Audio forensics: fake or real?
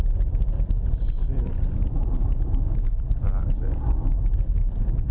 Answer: fake